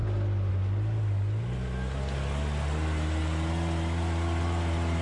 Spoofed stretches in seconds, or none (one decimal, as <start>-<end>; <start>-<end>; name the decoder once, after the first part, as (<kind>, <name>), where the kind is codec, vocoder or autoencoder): none